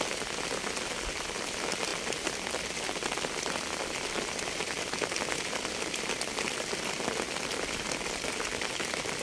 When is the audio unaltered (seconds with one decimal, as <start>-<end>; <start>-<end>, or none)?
0.0-9.2